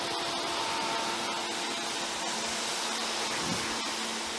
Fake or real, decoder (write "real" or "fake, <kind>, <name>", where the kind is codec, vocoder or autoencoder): real